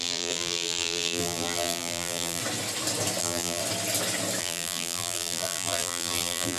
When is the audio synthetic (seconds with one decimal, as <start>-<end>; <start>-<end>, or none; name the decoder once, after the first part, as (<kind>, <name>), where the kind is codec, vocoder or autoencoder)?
0.0-2.4 (vocoder, BigVGAN v2); 3.2-3.6; 4.4-6.6